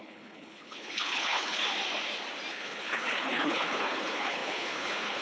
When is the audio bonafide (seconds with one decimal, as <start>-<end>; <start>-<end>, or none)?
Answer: 1.6-2.5